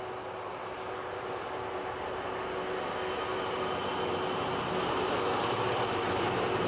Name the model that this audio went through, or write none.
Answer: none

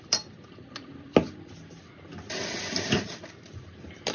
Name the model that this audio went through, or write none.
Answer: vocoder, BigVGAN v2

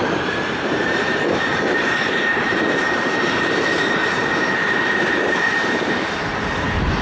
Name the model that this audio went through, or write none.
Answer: vocoder, BigVGAN v2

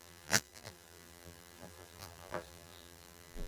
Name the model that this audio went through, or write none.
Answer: vocoder, BigVGAN v2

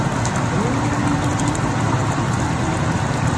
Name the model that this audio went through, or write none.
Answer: none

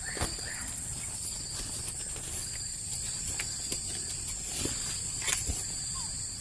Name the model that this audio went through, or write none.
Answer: none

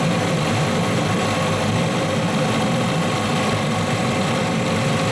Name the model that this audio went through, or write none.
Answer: none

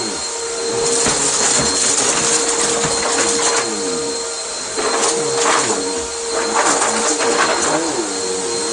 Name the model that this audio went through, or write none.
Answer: none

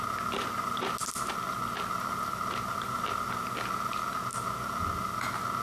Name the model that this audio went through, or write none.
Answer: none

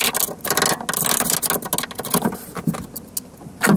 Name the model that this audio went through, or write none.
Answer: none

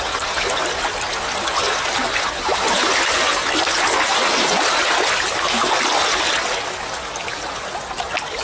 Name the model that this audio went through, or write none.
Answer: none